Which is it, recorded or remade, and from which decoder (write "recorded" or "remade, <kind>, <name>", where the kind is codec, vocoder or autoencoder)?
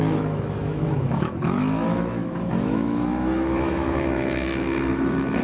remade, autoencoder, DAC-VAE